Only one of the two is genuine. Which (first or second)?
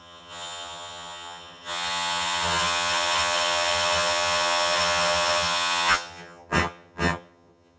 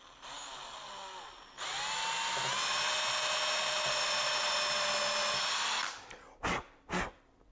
second